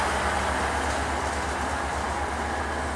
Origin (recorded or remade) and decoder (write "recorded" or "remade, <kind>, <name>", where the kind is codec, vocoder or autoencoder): recorded